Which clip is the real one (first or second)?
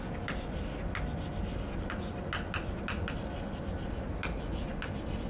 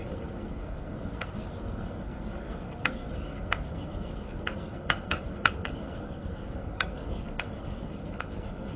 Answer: first